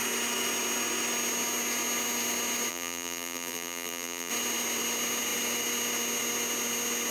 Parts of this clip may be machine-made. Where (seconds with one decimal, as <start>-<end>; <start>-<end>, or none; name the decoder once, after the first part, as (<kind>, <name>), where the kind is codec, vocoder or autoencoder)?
2.7-4.3 (vocoder, BigVGAN v2)